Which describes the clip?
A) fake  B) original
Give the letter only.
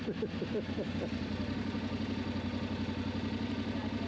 B